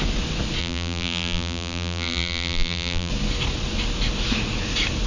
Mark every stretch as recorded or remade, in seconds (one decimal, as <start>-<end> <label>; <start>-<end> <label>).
0.0-0.6 recorded; 0.6-3.1 remade; 3.1-5.1 recorded